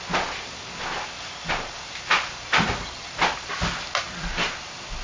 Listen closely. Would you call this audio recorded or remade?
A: recorded